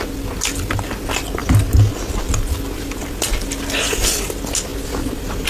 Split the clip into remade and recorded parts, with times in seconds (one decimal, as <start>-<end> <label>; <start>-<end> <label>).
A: 0.0-1.4 recorded; 1.4-3.3 remade; 3.3-4.7 recorded; 4.7-5.5 remade